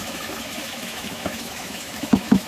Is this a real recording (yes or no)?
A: no